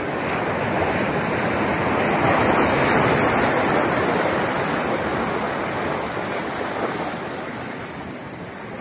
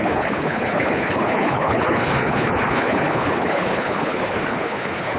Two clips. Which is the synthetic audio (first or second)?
second